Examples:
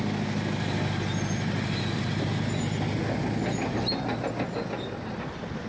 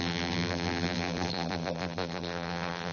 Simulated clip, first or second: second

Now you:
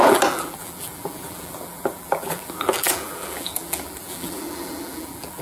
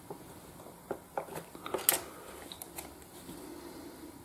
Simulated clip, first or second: first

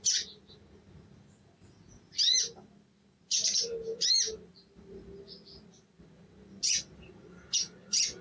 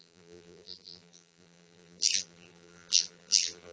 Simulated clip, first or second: second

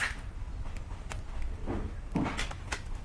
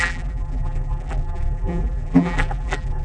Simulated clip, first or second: second